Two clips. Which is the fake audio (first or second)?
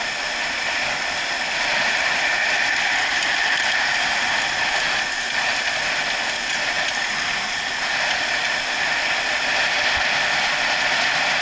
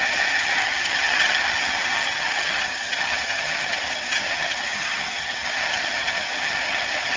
second